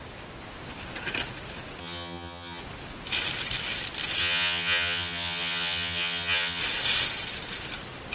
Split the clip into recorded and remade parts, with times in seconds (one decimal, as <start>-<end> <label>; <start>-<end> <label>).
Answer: 0.0-1.8 recorded; 1.8-2.6 remade; 2.6-4.2 recorded; 4.2-6.6 remade; 6.6-8.1 recorded